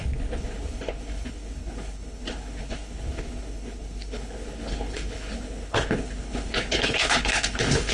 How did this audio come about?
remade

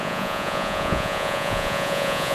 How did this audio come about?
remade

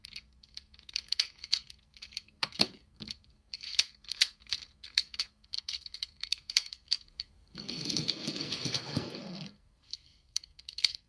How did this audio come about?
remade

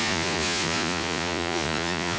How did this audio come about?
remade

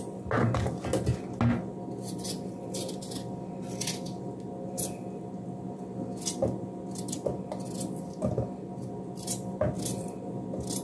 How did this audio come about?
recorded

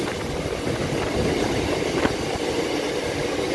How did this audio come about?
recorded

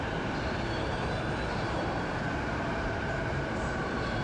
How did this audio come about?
remade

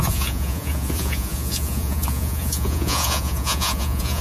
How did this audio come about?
remade